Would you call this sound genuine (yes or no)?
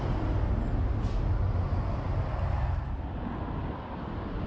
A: yes